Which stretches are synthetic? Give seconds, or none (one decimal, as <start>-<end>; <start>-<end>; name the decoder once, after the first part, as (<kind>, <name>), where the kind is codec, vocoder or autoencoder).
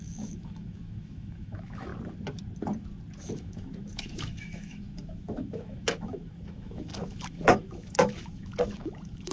0.0-1.9 (autoencoder, DAC-VAE); 3.2-9.3